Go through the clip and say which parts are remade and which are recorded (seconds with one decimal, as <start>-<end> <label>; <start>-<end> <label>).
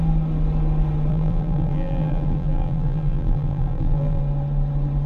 0.0-1.1 recorded; 1.1-4.2 remade; 4.2-5.1 recorded